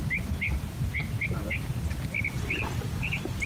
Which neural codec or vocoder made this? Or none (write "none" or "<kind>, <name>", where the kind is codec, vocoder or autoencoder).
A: none